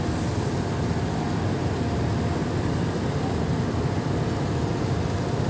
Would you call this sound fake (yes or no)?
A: no